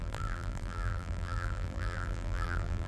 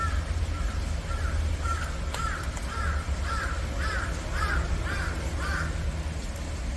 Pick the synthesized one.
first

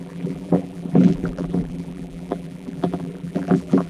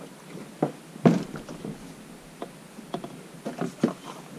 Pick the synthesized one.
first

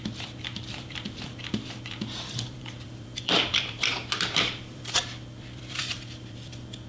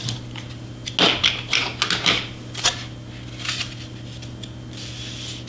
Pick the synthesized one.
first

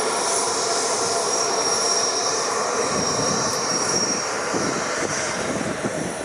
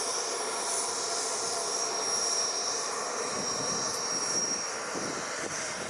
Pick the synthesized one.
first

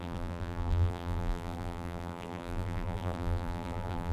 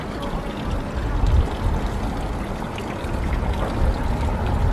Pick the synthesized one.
first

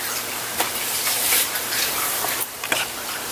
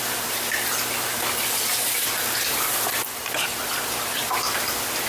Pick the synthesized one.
first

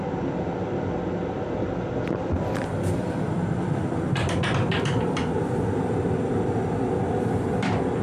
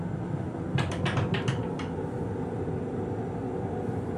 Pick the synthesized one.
first